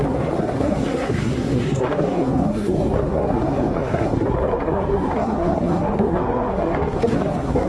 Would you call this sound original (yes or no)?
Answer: no